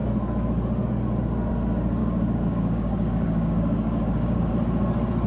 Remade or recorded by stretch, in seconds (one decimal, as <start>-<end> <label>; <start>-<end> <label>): 0.0-2.0 recorded; 2.0-4.5 remade; 4.5-5.3 recorded

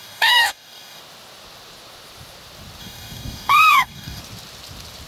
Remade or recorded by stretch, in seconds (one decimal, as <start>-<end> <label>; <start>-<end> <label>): 0.0-1.0 remade; 1.0-2.8 recorded; 2.8-4.2 remade; 4.2-5.1 recorded

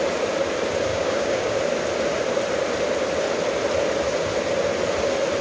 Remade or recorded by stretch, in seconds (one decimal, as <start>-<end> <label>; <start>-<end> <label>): 0.0-0.9 recorded; 0.9-1.6 remade; 1.6-5.4 recorded